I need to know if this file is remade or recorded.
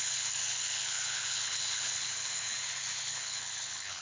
remade